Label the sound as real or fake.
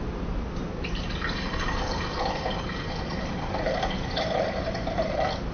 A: fake